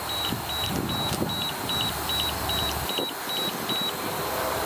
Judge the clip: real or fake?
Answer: real